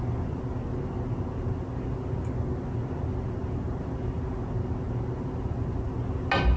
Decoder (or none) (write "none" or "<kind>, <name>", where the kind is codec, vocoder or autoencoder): none